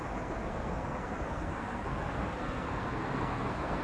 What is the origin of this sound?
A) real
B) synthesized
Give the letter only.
B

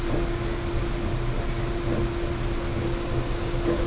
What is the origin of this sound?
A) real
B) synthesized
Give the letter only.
A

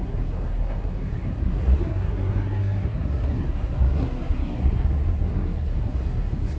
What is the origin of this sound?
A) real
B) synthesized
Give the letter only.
B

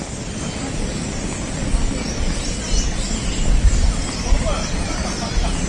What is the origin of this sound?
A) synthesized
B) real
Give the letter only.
B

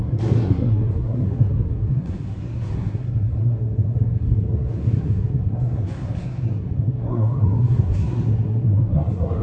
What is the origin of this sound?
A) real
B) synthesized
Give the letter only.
B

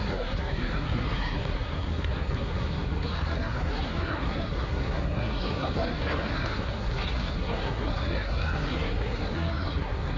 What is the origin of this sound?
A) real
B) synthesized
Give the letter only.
B